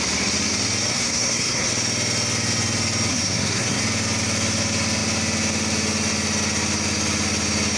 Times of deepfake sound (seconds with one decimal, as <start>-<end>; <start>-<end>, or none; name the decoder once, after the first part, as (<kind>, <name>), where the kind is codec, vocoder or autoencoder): 0.9-1.7 (codec, SNAC); 3.1-3.8